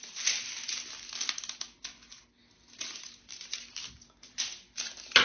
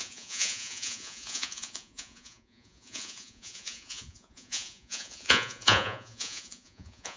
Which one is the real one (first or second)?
first